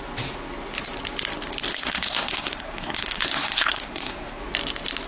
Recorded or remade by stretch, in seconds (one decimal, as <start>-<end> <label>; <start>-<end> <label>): 0.0-1.7 recorded; 1.7-4.4 remade; 4.4-5.1 recorded